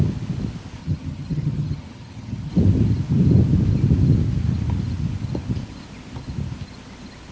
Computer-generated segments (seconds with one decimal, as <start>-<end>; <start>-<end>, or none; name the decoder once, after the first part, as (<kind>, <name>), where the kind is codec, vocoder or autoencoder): 0.8-2.5 (vocoder, HiFi-GAN)